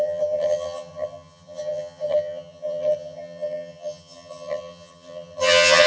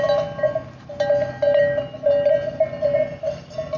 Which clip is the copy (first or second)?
first